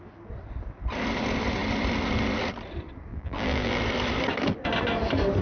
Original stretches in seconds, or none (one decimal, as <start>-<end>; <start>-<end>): 0.0-3.1; 3.8-5.4